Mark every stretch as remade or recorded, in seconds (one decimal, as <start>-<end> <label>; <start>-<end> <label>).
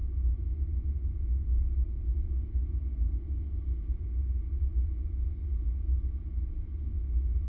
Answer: 0.0-7.5 recorded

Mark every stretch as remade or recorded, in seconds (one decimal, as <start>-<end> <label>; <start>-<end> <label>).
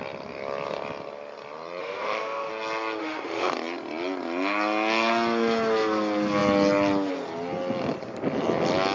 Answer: 0.0-1.8 recorded; 1.8-2.5 remade; 2.5-3.0 recorded; 3.0-3.5 remade; 3.5-8.9 recorded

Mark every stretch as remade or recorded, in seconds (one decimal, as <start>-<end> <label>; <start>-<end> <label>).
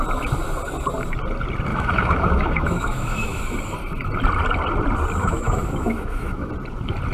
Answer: 0.0-1.7 recorded; 1.7-3.4 remade; 3.4-5.2 recorded; 5.2-6.5 remade; 6.5-7.1 recorded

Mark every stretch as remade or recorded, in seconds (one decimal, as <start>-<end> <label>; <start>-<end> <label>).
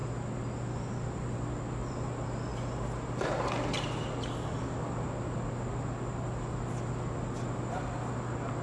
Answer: 0.0-8.6 recorded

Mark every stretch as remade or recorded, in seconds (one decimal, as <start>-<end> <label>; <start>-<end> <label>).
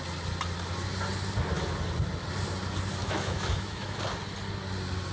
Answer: 0.0-3.0 recorded; 3.0-4.0 remade; 4.0-5.1 recorded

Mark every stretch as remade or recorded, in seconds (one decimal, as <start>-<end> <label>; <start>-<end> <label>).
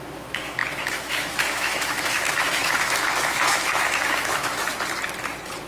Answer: 0.0-4.7 remade; 4.7-5.7 recorded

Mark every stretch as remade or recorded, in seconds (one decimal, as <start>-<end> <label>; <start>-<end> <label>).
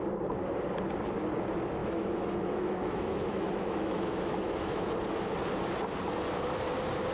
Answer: 0.0-1.8 recorded; 1.8-4.9 remade; 4.9-7.1 recorded